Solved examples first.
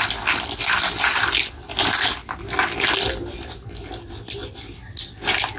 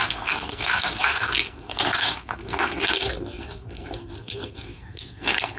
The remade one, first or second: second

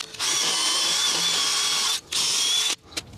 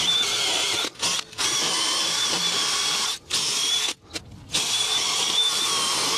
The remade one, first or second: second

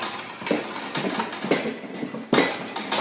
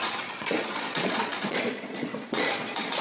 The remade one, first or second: second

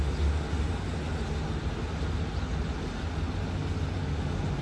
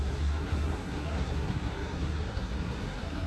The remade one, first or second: second